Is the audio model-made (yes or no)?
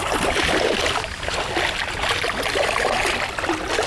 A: no